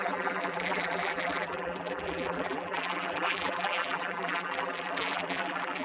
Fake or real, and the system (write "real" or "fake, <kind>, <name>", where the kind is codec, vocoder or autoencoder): fake, vocoder, BigVGAN v2